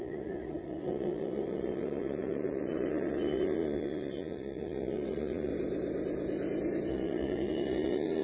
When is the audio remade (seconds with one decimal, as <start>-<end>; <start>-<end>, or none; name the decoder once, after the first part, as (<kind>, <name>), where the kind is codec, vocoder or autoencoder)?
0.0-5.5 (vocoder, Vocos); 6.9-8.2